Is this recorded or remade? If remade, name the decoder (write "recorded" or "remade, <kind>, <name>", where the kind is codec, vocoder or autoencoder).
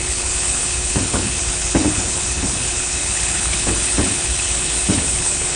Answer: remade, codec, HILCodec